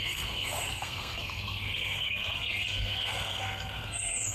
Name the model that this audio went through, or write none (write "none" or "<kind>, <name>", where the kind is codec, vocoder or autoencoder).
codec, SNAC